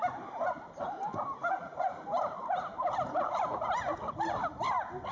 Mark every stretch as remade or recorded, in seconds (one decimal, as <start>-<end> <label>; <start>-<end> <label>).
0.0-5.1 recorded